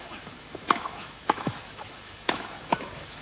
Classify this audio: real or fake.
fake